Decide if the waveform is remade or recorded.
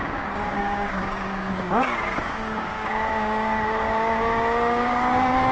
remade